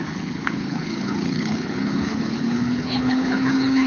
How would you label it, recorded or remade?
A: remade